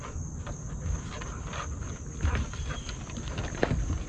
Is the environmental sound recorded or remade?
recorded